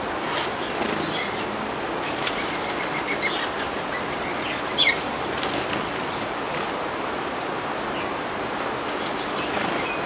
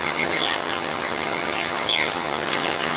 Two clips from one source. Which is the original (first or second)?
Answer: first